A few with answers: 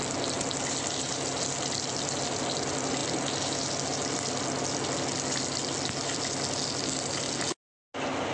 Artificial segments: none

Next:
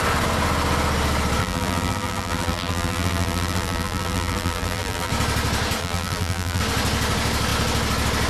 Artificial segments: 1.4-5.1; 5.8-6.6

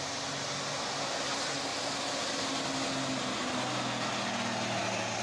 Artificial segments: none

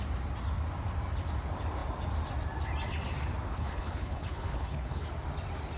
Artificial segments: 3.5-5.1